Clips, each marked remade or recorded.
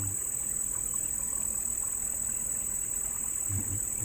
remade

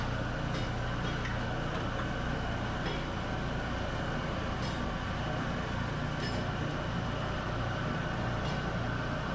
recorded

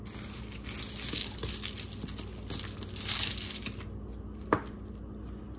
recorded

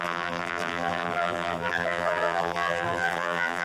remade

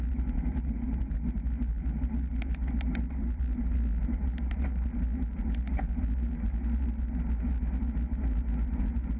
recorded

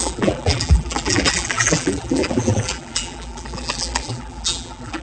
remade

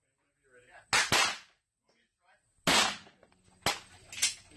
recorded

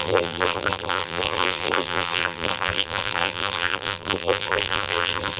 remade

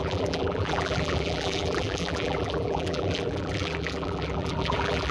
remade